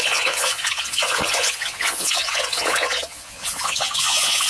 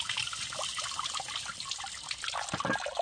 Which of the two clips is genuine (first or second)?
second